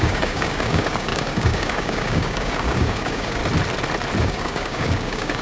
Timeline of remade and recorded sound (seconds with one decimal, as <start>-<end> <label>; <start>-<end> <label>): 0.0-3.4 remade; 3.4-4.2 recorded; 4.2-5.4 remade